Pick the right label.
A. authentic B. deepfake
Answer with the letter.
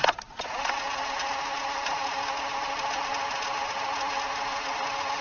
A